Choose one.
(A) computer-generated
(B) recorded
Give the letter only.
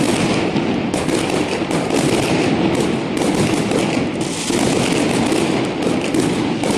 B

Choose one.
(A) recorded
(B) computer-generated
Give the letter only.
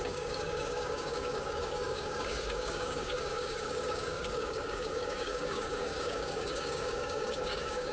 B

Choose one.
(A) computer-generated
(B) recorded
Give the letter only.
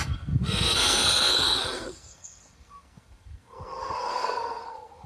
A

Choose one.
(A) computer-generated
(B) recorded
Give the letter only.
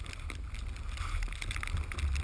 B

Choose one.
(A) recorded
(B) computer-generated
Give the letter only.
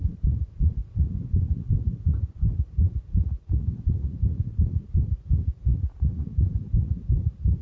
B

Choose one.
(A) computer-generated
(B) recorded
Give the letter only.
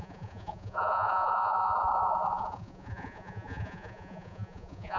A